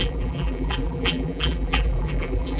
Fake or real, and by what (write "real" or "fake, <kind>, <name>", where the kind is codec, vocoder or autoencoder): fake, vocoder, BigVGAN v2